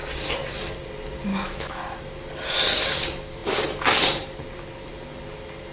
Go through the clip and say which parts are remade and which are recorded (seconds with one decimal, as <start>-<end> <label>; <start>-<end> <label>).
0.0-1.3 recorded; 1.3-1.8 remade; 1.8-5.7 recorded